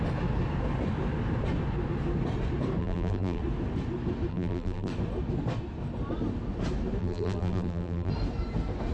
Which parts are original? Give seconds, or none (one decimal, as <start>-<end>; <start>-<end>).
0.0-2.8; 3.4-4.3; 4.9-7.0; 8.1-8.9